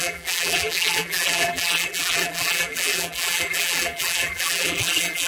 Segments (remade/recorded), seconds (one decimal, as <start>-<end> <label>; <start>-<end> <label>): 0.0-5.3 remade